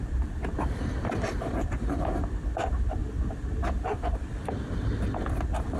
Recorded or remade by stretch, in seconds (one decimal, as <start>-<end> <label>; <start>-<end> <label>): 0.0-3.0 remade; 3.0-3.6 recorded; 3.6-5.8 remade